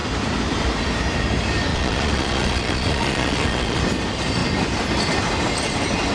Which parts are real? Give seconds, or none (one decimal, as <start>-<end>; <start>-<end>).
0.0-1.7; 3.8-6.1

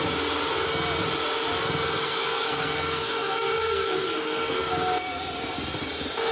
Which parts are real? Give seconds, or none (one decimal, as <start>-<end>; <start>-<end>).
0.0-2.0; 4.7-6.3

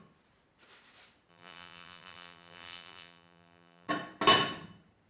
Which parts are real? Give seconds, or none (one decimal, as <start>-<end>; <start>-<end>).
0.0-1.3; 3.9-5.1

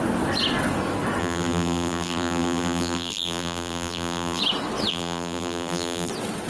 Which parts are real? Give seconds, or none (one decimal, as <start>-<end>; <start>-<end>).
0.0-1.2; 4.4-4.9; 6.1-6.5

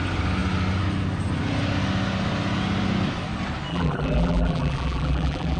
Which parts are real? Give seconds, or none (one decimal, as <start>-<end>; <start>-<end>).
0.0-3.7

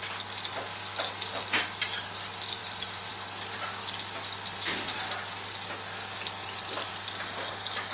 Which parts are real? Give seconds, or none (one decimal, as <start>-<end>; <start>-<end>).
0.0-2.6; 3.1-7.9

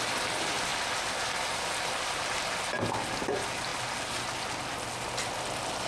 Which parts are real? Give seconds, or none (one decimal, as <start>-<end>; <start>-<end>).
0.0-5.9

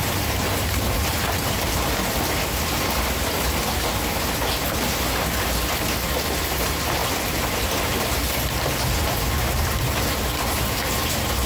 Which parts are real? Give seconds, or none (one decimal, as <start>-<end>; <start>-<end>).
2.0-6.4; 7.0-10.5